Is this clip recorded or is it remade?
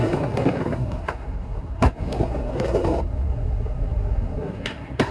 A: remade